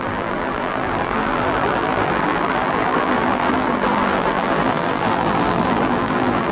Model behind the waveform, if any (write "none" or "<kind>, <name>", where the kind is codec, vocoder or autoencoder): vocoder, BigVGAN v2